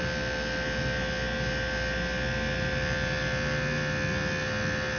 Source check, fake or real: real